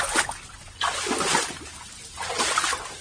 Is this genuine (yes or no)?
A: yes